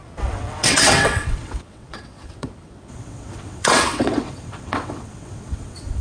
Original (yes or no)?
no